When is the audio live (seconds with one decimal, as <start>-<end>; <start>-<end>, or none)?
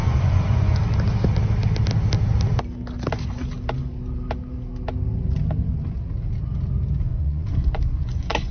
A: 0.8-7.1